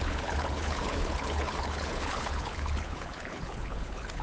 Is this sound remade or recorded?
remade